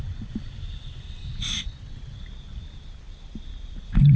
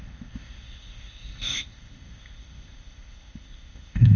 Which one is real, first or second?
first